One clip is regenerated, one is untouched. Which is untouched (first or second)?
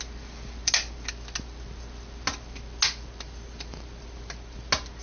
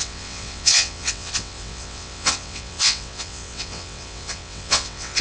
first